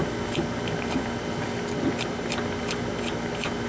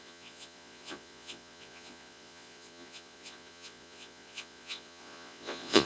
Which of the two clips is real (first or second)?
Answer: first